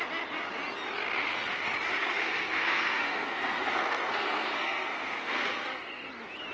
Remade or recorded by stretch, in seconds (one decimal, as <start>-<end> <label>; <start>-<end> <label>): 0.0-2.2 recorded; 2.2-6.1 remade; 6.1-6.5 recorded